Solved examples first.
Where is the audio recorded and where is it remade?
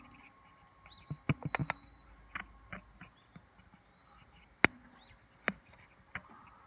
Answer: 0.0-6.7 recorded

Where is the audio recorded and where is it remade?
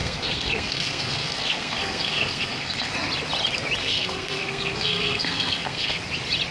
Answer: 0.0-2.9 remade; 2.9-3.8 recorded; 3.8-6.0 remade; 6.0-6.5 recorded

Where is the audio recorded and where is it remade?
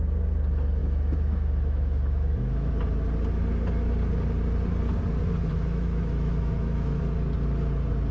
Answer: 0.0-0.8 recorded; 0.8-2.7 remade; 2.7-5.5 recorded; 5.5-7.0 remade; 7.0-8.1 recorded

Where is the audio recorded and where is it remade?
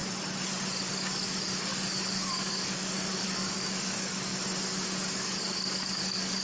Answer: 0.0-0.9 recorded; 0.9-4.3 remade; 4.3-5.1 recorded; 5.1-6.4 remade